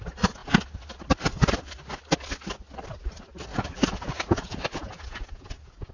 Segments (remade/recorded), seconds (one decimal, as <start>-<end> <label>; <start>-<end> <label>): 0.0-3.5 recorded; 3.5-5.9 remade